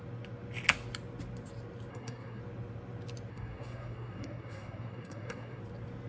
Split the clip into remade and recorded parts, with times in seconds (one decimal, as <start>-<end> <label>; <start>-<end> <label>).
0.0-1.9 recorded; 1.9-2.4 remade; 2.4-3.3 recorded; 3.3-5.6 remade; 5.6-6.1 recorded